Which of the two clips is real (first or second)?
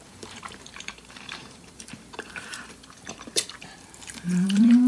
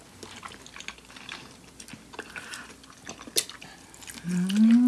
second